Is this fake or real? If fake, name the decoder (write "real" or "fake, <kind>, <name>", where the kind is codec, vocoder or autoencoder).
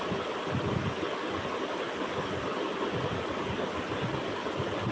real